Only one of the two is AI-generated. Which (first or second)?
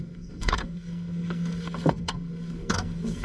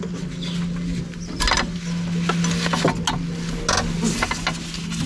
first